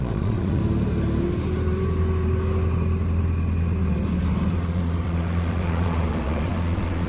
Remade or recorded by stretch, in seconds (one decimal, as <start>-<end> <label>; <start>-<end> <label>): 0.0-0.6 remade; 0.6-4.5 recorded; 4.5-7.1 remade